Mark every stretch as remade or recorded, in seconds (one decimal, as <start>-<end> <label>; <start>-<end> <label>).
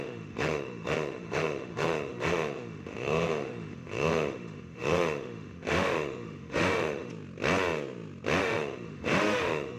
0.0-7.1 remade; 7.1-8.4 recorded; 8.4-9.8 remade